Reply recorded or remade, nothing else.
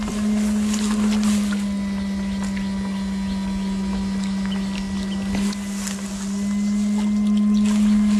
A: recorded